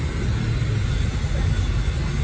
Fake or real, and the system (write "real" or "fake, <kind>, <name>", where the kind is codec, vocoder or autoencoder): real